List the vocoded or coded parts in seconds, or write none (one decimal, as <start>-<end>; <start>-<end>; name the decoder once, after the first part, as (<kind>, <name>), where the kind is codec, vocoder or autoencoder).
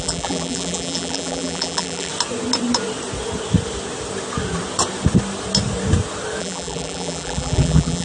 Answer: 0.0-2.1 (vocoder, BigVGAN v2); 6.4-8.0